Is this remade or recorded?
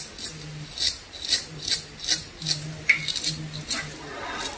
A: recorded